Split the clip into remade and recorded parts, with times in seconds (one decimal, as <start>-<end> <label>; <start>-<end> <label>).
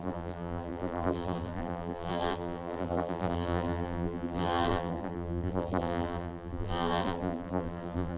0.0-8.2 remade